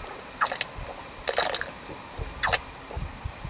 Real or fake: real